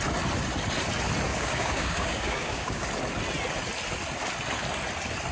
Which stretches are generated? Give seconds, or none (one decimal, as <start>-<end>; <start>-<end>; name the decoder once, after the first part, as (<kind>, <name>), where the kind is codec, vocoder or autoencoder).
1.3-2.9 (codec, DAC)